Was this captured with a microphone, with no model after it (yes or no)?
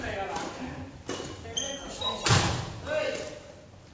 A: yes